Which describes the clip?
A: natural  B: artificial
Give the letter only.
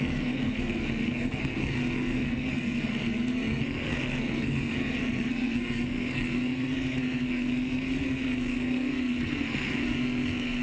B